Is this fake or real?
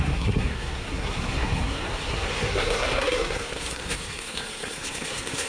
fake